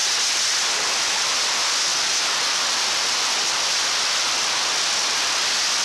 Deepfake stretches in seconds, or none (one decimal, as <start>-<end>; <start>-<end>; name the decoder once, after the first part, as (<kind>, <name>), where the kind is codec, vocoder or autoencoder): none